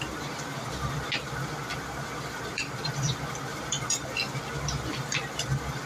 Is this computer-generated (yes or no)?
yes